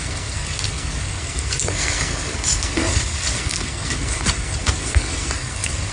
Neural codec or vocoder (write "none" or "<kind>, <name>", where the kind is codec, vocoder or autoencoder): codec, SNAC